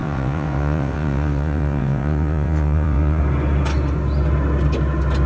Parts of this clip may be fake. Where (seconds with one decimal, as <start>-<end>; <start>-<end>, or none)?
0.0-3.2